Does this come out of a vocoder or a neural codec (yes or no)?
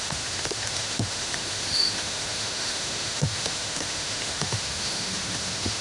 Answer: yes